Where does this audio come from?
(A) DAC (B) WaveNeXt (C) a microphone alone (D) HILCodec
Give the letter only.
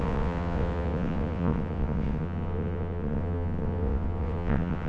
B